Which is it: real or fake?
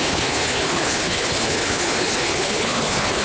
fake